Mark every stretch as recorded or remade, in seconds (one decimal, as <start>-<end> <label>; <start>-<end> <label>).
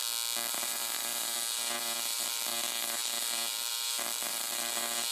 0.0-0.5 recorded; 0.5-5.1 remade